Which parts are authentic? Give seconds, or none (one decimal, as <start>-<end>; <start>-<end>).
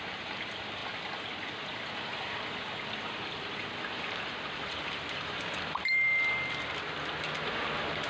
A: 0.8-2.9; 6.1-8.1